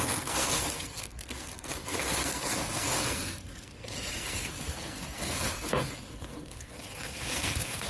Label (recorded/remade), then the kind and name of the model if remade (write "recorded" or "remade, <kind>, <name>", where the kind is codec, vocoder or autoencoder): remade, codec, SNAC